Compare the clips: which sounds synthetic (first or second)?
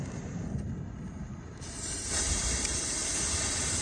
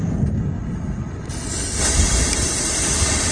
first